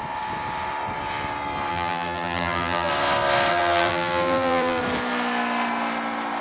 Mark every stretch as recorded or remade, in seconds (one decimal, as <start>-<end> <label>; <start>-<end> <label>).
0.0-1.7 recorded; 1.7-2.9 remade; 2.9-3.5 recorded; 3.5-4.8 remade; 4.8-6.4 recorded